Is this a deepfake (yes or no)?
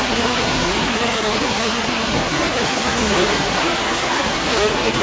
yes